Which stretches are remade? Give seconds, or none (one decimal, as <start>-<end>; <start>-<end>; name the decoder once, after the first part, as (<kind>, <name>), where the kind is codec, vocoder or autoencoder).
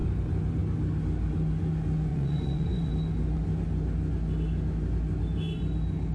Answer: 2.1-2.9 (vocoder, Vocos)